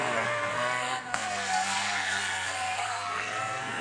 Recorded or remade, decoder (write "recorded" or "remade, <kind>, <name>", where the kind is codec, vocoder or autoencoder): remade, codec, SNAC